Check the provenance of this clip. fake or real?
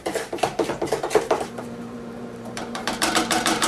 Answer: fake